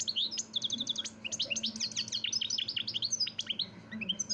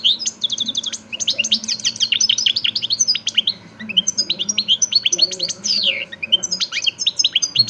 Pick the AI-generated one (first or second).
second